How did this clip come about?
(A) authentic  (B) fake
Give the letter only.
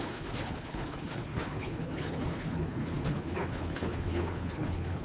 B